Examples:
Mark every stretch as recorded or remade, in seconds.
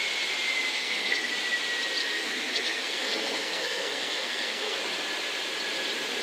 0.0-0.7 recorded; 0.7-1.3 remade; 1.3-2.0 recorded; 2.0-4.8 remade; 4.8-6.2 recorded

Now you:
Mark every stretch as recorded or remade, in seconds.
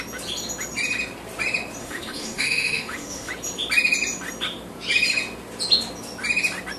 0.0-1.8 recorded; 1.8-3.3 remade; 3.3-6.8 recorded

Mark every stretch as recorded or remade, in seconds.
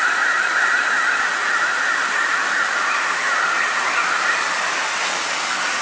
0.0-5.8 recorded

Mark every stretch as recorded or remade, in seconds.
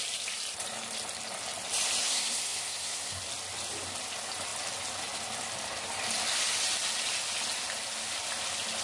0.0-2.0 recorded; 2.0-3.2 remade; 3.2-8.8 recorded